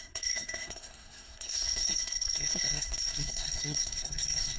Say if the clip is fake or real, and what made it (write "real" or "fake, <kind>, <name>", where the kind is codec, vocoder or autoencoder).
fake, codec, SNAC